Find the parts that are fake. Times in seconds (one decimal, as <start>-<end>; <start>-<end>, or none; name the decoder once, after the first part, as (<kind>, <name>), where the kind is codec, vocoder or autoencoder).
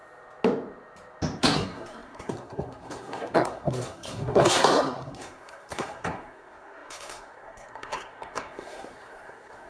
1.4-9.7 (codec, SNAC)